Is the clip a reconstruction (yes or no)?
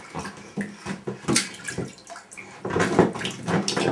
no